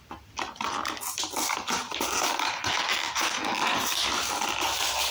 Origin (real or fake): fake